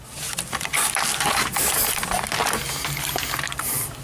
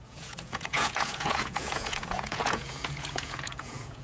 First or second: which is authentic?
first